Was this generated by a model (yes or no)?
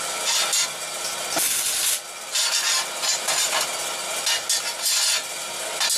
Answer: no